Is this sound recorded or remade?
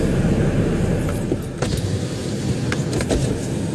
recorded